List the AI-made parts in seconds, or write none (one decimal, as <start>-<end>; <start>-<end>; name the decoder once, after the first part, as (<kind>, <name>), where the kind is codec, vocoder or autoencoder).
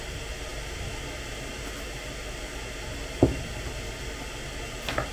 none